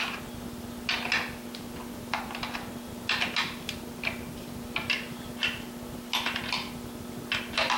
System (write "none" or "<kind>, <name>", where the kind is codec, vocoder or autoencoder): none